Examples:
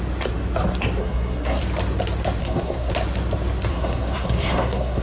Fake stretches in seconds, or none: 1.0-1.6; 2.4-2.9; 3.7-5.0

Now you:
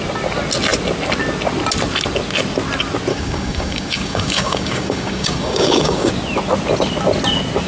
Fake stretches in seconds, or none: 3.1-6.1

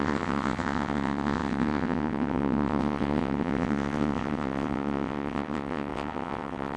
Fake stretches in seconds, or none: 0.0-6.8

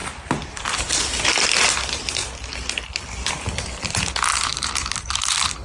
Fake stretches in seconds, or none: 0.0-0.9; 4.5-5.6